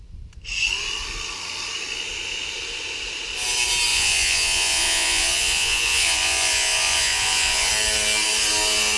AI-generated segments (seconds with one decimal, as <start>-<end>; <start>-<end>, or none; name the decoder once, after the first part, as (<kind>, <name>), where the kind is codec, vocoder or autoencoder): 3.9-7.7 (vocoder, Vocos)